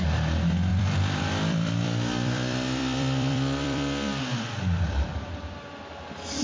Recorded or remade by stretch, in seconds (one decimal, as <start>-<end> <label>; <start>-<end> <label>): 0.0-0.7 recorded; 0.7-4.2 remade; 4.2-6.4 recorded